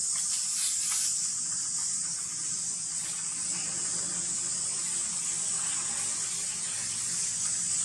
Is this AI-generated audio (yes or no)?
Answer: no